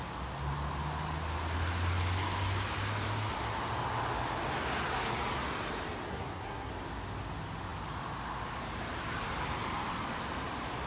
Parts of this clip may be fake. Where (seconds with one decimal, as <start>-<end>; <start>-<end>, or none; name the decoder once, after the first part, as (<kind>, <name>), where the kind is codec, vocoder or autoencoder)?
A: 6.1-6.7 (codec, SNAC)